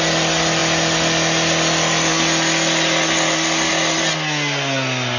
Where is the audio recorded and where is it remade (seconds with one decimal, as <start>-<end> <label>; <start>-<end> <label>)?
0.0-5.2 recorded